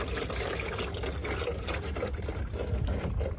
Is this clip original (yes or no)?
yes